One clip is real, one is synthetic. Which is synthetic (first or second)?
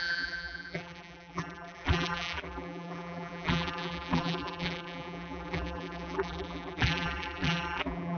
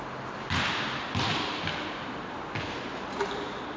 first